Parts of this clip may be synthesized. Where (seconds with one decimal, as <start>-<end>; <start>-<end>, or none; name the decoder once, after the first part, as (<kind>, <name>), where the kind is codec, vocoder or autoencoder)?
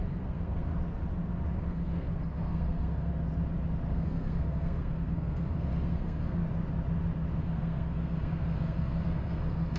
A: 0.0-0.7 (codec, SNAC); 1.6-3.1; 3.9-6.4; 7.4-9.8